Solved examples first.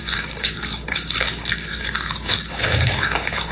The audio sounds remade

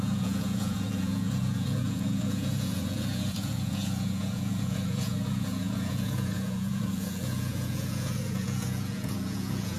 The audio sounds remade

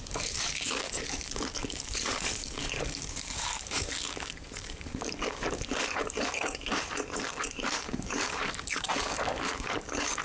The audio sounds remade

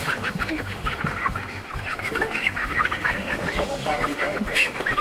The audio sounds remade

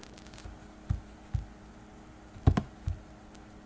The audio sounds recorded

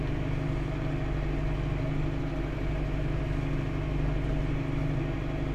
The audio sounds recorded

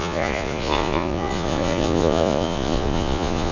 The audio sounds remade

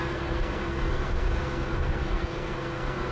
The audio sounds remade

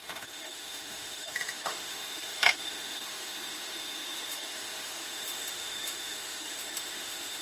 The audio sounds remade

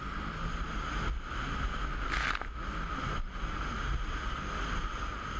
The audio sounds recorded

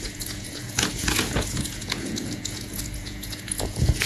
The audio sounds remade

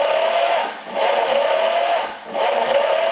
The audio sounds remade